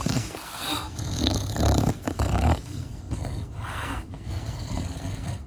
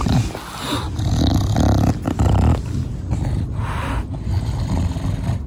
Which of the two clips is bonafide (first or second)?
second